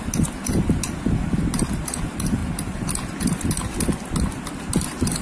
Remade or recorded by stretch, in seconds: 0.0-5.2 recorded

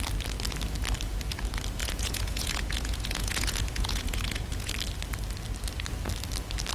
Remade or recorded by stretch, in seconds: 0.0-1.8 recorded; 1.8-4.7 remade; 4.7-6.7 recorded